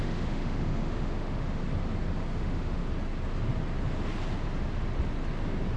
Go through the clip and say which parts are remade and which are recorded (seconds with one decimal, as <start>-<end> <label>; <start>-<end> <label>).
0.0-1.6 remade; 1.6-2.4 recorded; 2.4-2.8 remade; 2.8-5.8 recorded